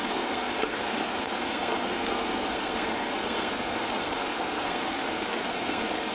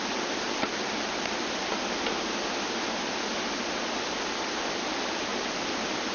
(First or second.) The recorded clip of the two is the second